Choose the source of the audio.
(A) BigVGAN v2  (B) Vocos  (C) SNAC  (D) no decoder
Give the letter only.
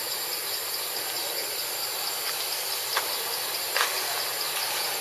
D